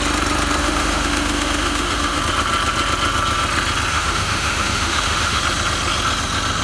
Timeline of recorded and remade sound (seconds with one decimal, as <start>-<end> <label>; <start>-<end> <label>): 0.0-0.6 recorded; 0.6-2.2 remade; 2.2-3.9 recorded; 3.9-5.4 remade; 5.4-6.6 recorded